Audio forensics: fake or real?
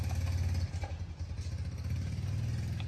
real